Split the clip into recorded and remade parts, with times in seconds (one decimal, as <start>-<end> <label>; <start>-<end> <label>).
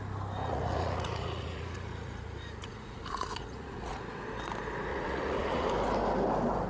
0.0-0.4 recorded; 0.4-4.0 remade; 4.0-4.9 recorded; 4.9-5.7 remade; 5.7-6.7 recorded